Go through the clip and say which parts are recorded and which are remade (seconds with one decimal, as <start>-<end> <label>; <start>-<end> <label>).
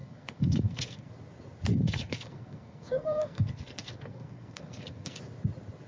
0.0-1.1 remade; 1.1-1.7 recorded; 1.7-5.2 remade; 5.2-5.9 recorded